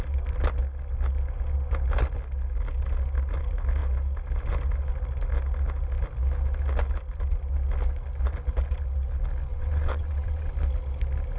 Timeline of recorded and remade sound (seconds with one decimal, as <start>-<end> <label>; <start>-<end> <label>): 0.0-9.5 recorded; 9.5-10.5 remade; 10.5-11.4 recorded